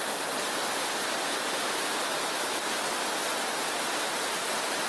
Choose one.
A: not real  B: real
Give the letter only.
B